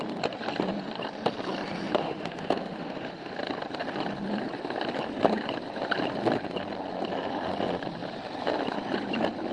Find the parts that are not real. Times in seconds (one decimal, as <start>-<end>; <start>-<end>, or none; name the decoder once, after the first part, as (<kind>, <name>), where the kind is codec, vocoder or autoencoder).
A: 2.0-3.3 (autoencoder, DAC-VAE)